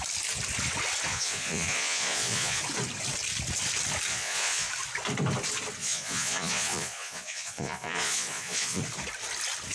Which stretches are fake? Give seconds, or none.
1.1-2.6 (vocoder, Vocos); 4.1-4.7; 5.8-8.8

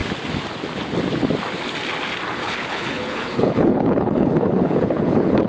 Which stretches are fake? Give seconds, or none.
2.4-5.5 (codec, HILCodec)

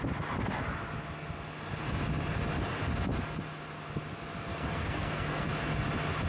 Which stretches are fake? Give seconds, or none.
4.5-5.5 (codec, SNAC)

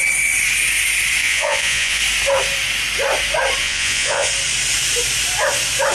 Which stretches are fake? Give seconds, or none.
1.2-2.0 (vocoder, Vocos); 3.6-4.3